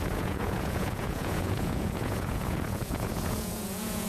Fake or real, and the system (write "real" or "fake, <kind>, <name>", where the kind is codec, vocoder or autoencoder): fake, vocoder, Vocos